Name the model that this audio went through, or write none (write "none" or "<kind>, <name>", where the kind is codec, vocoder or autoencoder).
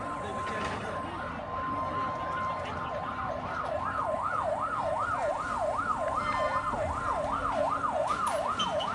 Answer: none